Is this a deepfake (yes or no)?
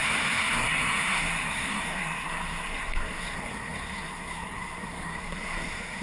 yes